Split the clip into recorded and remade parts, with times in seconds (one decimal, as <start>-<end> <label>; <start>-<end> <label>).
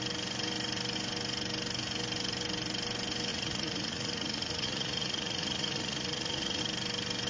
0.0-3.3 recorded; 3.3-6.6 remade; 6.6-7.3 recorded